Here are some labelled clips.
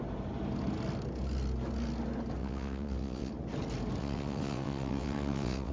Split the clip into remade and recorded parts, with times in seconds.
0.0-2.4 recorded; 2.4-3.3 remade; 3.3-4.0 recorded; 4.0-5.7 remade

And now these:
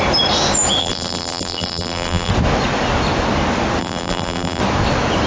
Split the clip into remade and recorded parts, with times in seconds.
0.0-0.8 recorded; 0.8-2.3 remade; 2.3-3.8 recorded; 3.8-4.6 remade; 4.6-5.3 recorded

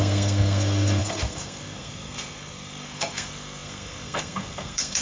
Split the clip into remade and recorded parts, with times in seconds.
0.0-5.0 remade

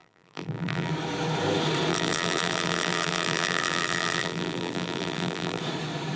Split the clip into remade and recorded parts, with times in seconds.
0.0-0.9 remade; 0.9-1.9 recorded; 1.9-5.6 remade; 5.6-6.2 recorded

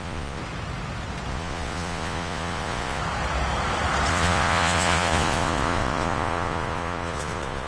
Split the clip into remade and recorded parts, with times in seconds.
0.0-0.4 remade; 0.4-1.3 recorded; 1.3-3.0 remade; 3.0-4.1 recorded; 4.1-7.7 remade

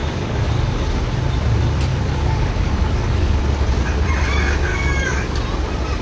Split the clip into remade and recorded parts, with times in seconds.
0.0-0.9 remade; 0.9-1.9 recorded; 1.9-3.4 remade; 3.4-4.7 recorded; 4.7-5.4 remade; 5.4-6.0 recorded